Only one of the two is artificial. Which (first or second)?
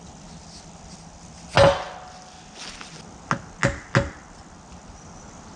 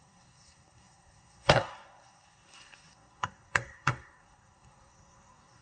second